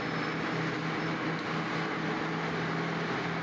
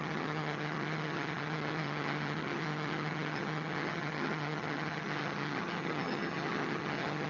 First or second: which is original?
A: first